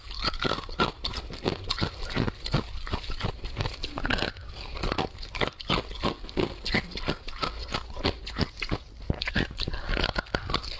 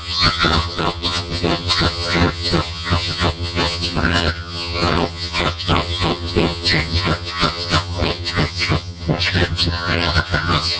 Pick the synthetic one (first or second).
second